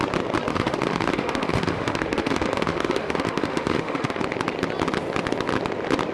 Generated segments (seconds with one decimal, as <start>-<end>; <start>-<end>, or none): 0.5-4.2